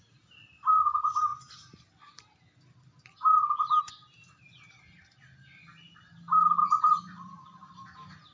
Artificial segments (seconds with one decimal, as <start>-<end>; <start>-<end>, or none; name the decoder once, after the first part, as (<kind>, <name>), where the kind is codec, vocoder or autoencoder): 6.6-7.7 (vocoder, Vocos)